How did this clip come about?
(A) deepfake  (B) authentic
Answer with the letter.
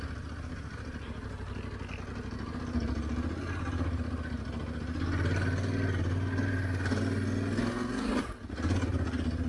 B